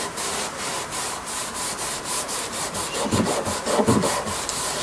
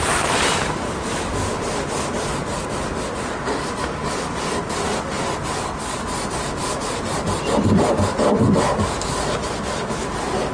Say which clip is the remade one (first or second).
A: first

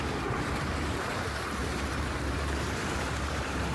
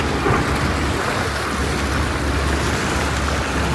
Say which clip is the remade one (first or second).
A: first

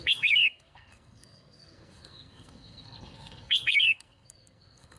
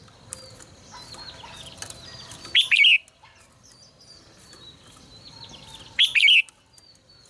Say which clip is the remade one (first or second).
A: first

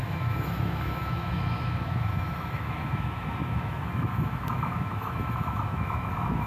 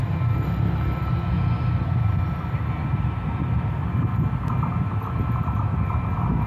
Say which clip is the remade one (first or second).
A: first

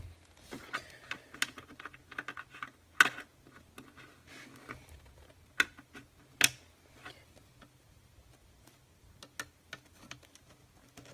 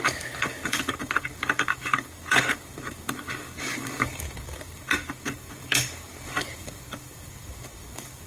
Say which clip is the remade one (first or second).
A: second